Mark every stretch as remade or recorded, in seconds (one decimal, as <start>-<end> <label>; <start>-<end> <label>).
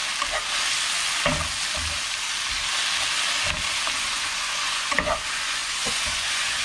0.0-4.0 recorded; 4.0-6.6 remade